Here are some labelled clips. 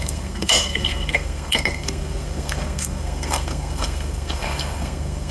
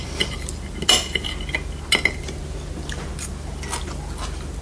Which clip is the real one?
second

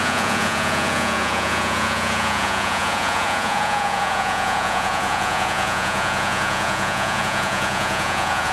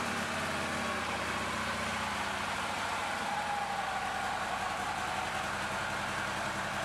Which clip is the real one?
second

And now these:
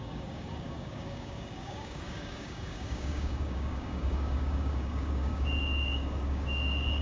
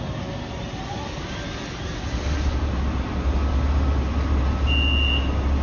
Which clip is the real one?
second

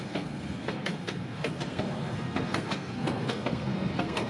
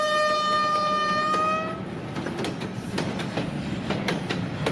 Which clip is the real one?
second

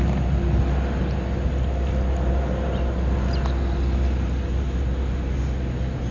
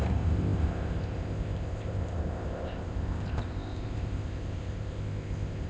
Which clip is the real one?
first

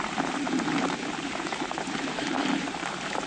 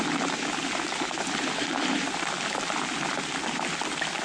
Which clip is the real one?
second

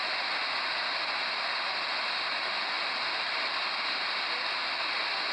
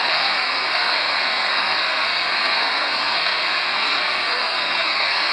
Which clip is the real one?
first